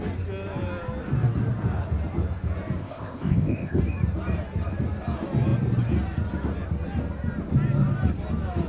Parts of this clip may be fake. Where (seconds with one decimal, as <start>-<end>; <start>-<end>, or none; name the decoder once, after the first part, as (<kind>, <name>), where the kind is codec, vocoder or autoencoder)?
2.8-3.8 (codec, ZipCodec)